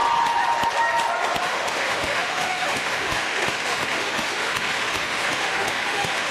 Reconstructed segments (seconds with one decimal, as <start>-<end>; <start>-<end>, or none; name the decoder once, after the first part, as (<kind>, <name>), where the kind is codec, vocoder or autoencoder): 1.4-6.3 (autoencoder, DAC-VAE)